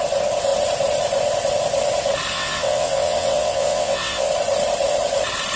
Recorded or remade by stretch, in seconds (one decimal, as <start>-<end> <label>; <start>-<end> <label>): 0.0-2.3 recorded; 2.3-4.3 remade; 4.3-5.6 recorded